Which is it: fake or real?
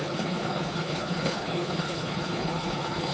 fake